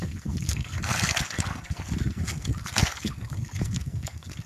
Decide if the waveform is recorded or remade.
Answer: remade